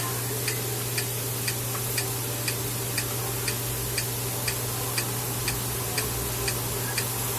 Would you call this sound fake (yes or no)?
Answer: no